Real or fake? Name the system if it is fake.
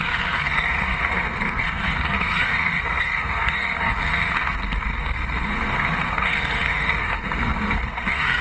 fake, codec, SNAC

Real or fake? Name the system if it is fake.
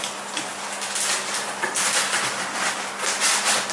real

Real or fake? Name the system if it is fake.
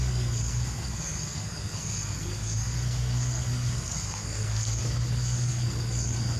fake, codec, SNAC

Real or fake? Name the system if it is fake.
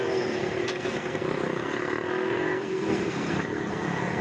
fake, codec, SNAC